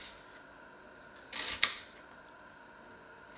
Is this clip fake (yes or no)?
no